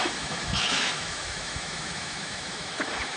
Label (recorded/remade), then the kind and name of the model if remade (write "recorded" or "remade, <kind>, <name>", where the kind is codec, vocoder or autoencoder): remade, autoencoder, DAC-VAE